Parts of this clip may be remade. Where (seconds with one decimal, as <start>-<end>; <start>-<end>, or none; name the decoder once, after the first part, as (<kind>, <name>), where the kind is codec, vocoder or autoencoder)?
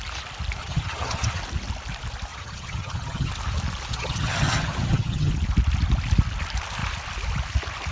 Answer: 0.6-1.4 (vocoder, HiFi-GAN); 2.3-3.3; 3.9-5.3